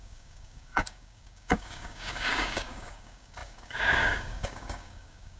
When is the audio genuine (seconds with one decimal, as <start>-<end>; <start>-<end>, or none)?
none